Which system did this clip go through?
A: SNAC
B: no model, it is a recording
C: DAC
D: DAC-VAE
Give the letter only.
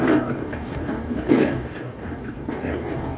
C